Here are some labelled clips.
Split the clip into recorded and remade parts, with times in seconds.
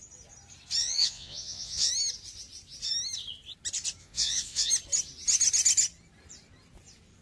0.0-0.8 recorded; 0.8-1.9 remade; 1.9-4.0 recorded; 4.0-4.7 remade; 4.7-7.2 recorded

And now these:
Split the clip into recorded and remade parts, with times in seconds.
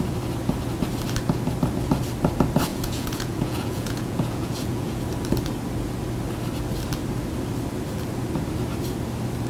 0.0-2.7 recorded; 2.7-5.0 remade; 5.0-9.5 recorded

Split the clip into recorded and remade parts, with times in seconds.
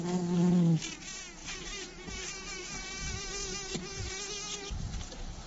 0.0-1.4 recorded; 1.4-3.3 remade; 3.3-5.5 recorded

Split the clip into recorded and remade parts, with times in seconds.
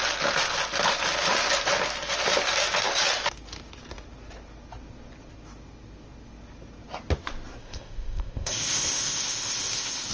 0.0-7.6 recorded; 7.6-10.1 remade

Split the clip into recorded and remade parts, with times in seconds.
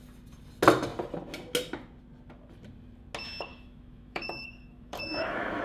0.0-3.5 recorded; 3.5-5.6 remade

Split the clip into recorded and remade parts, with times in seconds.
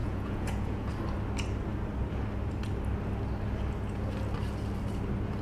0.0-0.9 remade; 0.9-5.4 recorded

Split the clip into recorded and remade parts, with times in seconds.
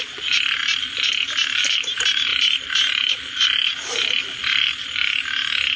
0.0-5.8 recorded